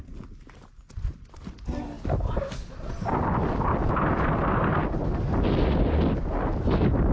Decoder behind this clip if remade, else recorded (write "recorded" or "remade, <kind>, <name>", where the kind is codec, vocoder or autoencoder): recorded